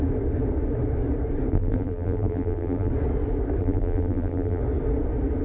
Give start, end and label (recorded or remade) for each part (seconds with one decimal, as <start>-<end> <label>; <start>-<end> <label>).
0.0-1.5 recorded; 1.5-2.9 remade; 2.9-3.6 recorded; 3.6-4.6 remade; 4.6-5.4 recorded